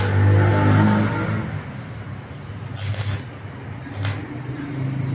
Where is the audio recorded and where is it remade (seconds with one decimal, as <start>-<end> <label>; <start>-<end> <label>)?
0.0-5.1 recorded